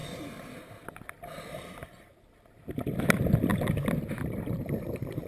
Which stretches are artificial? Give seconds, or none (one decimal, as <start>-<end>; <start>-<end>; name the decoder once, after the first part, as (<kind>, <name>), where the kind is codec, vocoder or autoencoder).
0.0-2.6 (vocoder, BigVGAN v2)